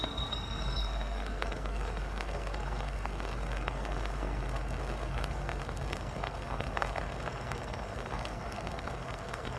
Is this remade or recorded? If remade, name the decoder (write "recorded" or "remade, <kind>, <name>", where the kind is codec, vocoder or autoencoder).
remade, codec, SNAC